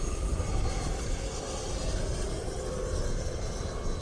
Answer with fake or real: real